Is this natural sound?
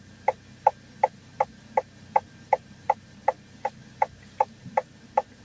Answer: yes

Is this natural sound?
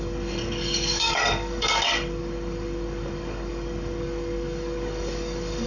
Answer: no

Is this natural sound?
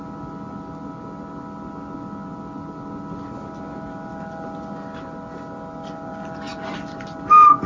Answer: yes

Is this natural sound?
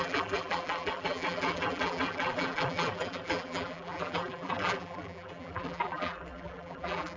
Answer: no